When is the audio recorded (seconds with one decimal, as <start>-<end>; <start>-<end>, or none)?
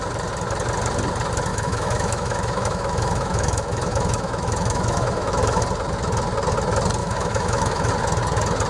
0.0-1.5; 5.6-7.0; 7.9-8.7